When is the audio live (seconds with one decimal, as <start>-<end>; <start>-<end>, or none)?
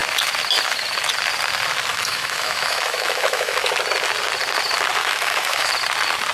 0.0-1.9; 3.7-5.0; 5.7-6.3